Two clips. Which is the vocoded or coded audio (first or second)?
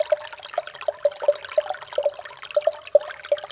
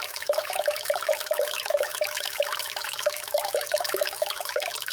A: second